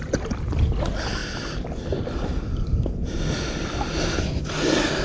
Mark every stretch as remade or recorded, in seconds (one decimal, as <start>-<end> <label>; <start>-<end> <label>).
0.0-5.0 recorded